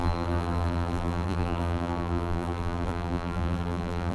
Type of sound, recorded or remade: remade